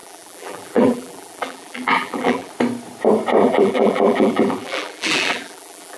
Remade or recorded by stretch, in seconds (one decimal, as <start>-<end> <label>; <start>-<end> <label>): 0.0-2.5 remade; 2.5-3.4 recorded; 3.4-6.0 remade